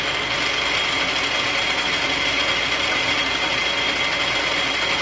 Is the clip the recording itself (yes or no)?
yes